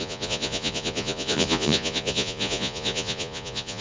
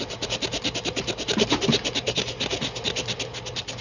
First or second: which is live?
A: second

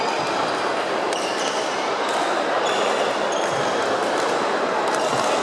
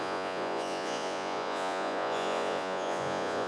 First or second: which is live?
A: first